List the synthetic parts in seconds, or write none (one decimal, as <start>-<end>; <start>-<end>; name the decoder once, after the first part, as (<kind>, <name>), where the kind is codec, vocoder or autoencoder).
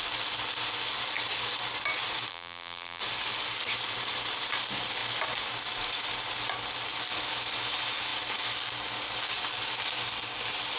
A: 2.3-3.0 (vocoder, BigVGAN v2)